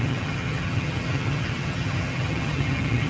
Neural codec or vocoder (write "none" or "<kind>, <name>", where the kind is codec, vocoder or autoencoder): vocoder, HiFi-GAN